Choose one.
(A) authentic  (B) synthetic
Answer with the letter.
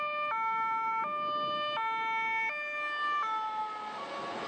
A